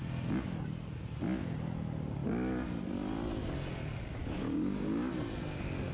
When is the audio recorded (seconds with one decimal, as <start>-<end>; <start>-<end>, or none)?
0.0-4.2; 5.1-5.9